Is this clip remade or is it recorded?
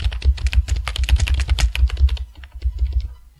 recorded